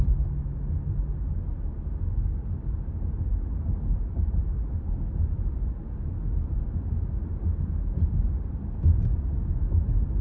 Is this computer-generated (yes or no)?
no